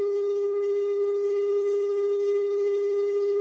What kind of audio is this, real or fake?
fake